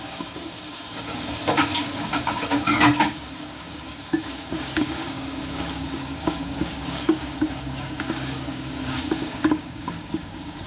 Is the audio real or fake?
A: fake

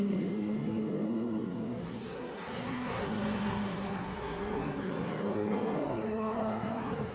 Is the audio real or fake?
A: fake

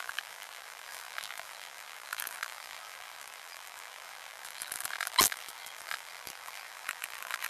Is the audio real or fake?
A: fake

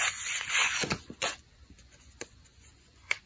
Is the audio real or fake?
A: fake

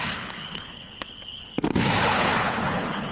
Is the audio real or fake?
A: fake